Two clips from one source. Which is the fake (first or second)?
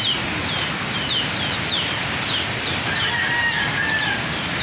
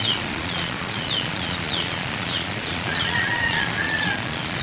second